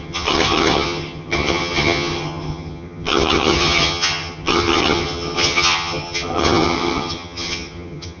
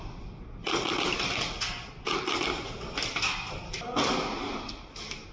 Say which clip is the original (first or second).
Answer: second